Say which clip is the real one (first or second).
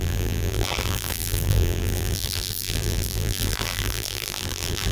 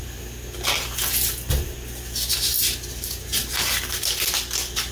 second